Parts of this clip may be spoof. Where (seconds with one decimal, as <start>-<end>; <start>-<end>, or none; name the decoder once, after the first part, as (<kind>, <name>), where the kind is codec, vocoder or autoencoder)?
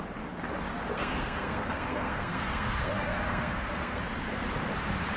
0.9-4.0 (codec, SNAC)